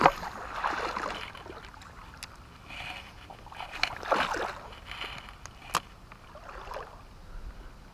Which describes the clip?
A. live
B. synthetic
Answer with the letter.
A